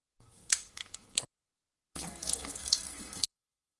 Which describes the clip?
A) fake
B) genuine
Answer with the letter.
A